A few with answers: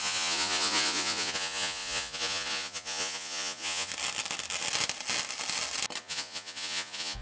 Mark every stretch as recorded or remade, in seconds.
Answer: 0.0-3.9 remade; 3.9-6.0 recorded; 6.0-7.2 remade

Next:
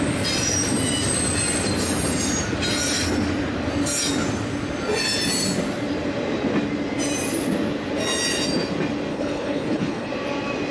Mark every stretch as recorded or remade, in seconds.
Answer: 0.0-9.1 recorded; 9.1-10.1 remade; 10.1-10.7 recorded

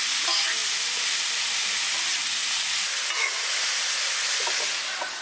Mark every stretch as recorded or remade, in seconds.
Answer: 0.0-5.2 recorded

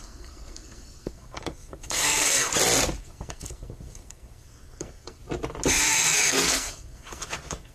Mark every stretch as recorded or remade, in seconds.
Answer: 0.0-2.5 remade; 2.5-3.0 recorded; 3.0-5.2 remade; 5.2-5.7 recorded; 5.7-7.7 remade

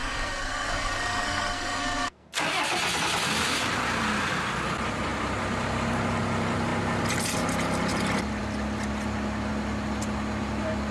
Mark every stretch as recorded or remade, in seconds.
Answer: 0.0-2.4 remade; 2.4-10.9 recorded

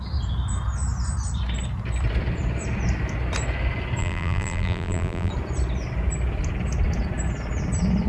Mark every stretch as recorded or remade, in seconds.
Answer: 0.0-4.0 recorded; 4.0-5.3 remade; 5.3-8.1 recorded

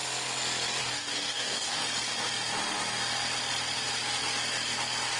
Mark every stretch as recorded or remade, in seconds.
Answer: 0.0-0.8 recorded; 0.8-1.8 remade; 1.8-5.2 recorded

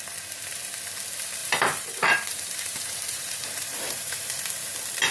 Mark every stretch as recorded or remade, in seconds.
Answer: 0.0-1.4 recorded; 1.4-4.5 remade; 4.5-5.1 recorded